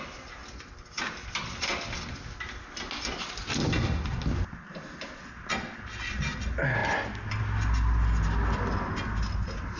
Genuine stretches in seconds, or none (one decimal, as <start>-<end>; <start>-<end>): 0.0-9.8